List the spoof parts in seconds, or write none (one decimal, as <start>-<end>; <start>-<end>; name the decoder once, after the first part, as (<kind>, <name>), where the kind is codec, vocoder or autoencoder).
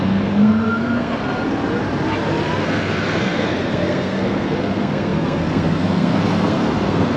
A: 0.0-1.2 (codec, SNAC); 2.6-7.2